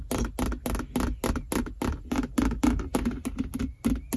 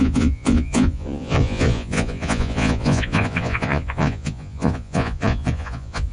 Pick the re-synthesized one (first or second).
second